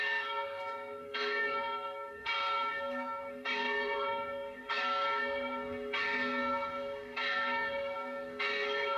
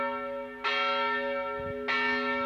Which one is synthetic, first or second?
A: first